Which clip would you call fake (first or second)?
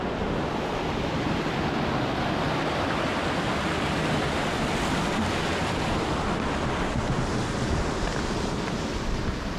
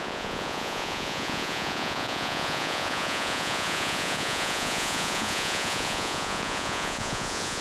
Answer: second